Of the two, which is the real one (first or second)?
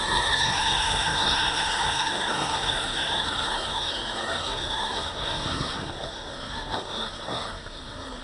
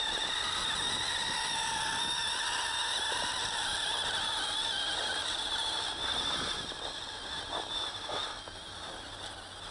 second